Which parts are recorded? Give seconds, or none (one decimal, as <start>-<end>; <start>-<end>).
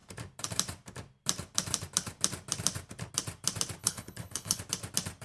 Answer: 0.0-3.8; 4.6-5.2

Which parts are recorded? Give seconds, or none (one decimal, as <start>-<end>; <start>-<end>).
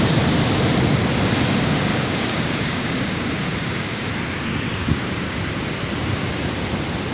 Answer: 0.0-1.9; 4.1-4.8; 5.4-7.1